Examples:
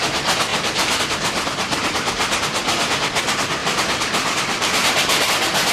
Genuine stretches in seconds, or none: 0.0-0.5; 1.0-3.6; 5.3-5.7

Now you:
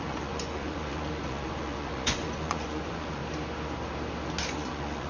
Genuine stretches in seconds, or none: 3.2-4.5

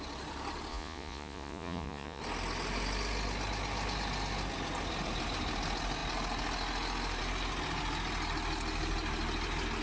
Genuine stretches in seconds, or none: 0.0-0.7; 2.2-9.8

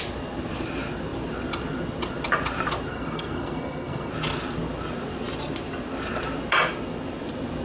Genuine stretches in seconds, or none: 0.0-2.9; 4.1-7.6

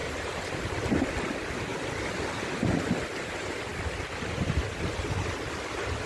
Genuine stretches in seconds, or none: 0.7-6.1